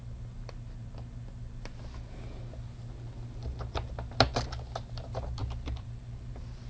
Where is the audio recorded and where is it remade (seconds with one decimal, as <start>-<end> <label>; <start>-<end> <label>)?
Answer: 0.0-6.7 recorded